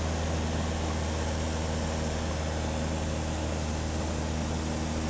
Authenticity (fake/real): real